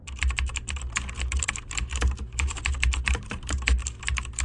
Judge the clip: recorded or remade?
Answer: remade